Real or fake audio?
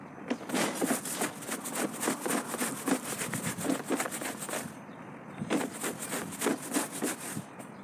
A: real